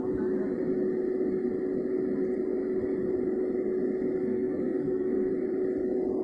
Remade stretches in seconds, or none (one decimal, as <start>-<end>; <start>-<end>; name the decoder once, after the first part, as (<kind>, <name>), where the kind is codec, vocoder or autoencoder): 4.2-5.3 (codec, SNAC)